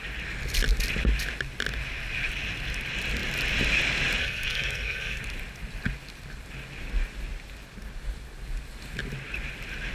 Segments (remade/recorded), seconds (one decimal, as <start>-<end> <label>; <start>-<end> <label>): 0.0-4.2 recorded; 4.2-5.2 remade; 5.2-9.9 recorded